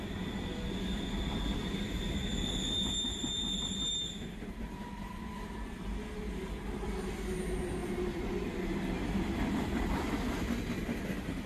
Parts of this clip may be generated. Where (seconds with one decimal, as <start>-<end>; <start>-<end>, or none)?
7.8-11.5